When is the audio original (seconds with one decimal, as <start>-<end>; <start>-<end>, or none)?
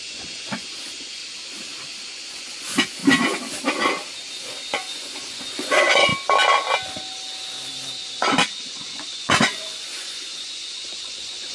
1.2-2.1; 3.0-4.3; 6.1-8.1